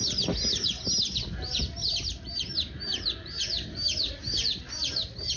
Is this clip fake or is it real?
real